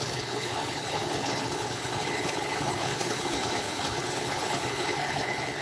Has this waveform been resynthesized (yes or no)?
yes